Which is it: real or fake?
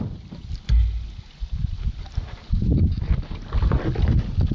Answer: real